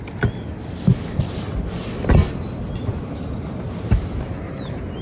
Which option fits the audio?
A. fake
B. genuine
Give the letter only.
B